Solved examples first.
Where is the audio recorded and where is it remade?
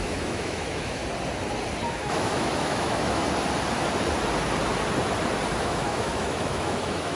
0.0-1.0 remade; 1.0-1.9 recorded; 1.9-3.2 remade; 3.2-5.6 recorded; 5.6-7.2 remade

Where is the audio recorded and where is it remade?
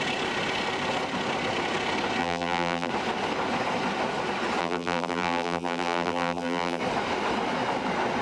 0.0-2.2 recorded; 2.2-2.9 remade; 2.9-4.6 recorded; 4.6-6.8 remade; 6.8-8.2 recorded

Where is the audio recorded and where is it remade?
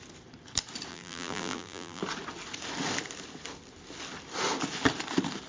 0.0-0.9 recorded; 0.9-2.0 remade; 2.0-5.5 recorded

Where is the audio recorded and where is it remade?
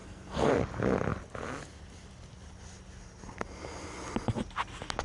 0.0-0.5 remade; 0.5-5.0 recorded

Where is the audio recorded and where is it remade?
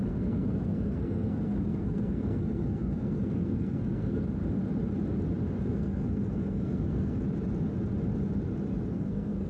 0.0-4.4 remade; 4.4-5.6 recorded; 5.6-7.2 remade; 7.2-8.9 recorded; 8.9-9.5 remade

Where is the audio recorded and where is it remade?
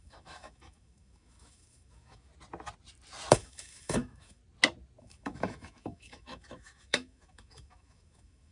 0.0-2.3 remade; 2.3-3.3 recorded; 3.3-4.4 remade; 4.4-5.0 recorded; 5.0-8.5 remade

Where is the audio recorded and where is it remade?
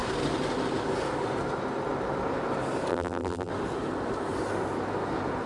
0.0-2.9 recorded; 2.9-3.5 remade; 3.5-5.5 recorded